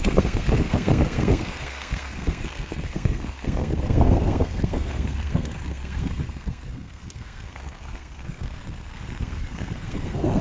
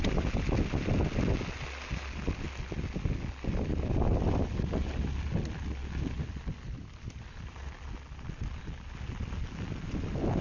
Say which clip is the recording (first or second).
second